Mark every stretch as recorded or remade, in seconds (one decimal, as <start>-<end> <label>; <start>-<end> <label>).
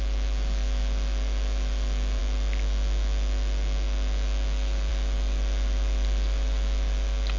0.0-7.4 recorded